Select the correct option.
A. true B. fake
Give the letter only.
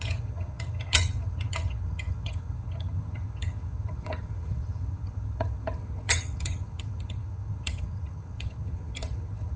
B